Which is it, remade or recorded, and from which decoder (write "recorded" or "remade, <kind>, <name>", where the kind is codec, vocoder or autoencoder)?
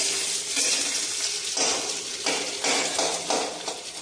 recorded